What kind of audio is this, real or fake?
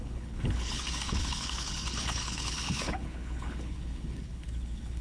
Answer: fake